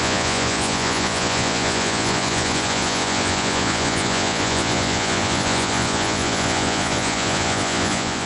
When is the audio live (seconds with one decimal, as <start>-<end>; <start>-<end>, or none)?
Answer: none